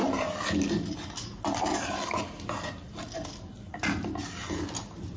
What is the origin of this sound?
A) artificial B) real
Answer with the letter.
B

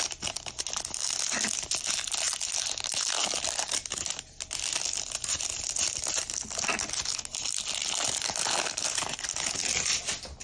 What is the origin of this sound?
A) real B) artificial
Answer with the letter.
A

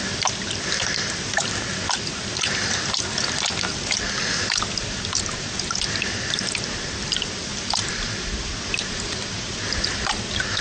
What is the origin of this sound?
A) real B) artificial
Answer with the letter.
A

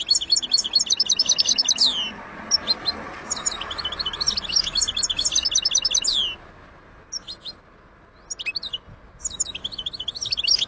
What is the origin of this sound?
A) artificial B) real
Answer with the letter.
B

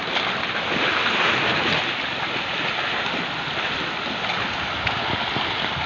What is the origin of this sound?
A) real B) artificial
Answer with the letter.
A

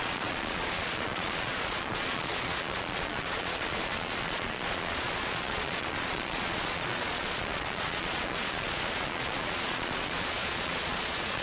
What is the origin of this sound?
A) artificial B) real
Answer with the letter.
A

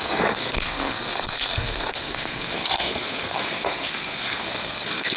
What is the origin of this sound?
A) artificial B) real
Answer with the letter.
A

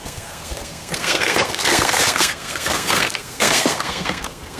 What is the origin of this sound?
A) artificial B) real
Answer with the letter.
A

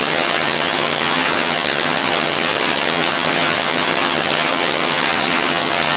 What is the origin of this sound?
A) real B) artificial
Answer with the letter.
B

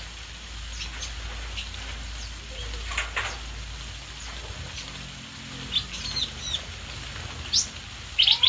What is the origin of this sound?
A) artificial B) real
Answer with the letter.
B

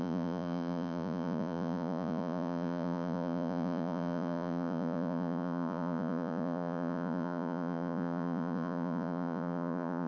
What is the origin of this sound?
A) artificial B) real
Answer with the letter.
A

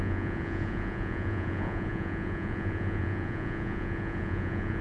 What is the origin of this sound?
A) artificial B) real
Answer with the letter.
A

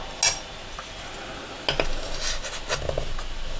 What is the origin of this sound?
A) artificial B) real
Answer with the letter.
B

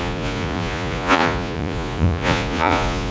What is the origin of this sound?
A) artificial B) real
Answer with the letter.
A